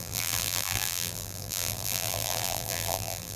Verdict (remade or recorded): remade